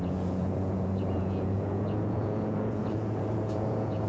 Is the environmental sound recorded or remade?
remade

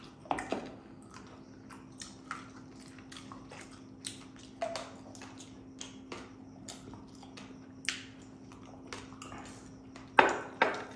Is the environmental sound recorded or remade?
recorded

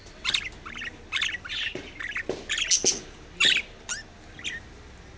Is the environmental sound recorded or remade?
recorded